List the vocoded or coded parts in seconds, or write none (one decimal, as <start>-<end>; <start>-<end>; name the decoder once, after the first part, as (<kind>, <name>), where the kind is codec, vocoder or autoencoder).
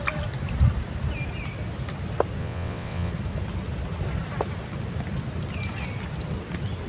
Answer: 2.4-3.1 (vocoder, WaveNeXt)